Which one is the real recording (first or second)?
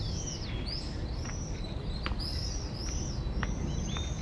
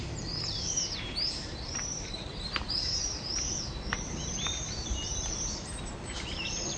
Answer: first